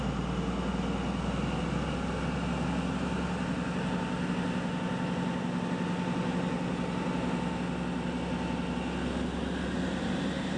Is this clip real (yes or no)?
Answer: yes